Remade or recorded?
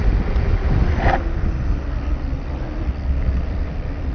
recorded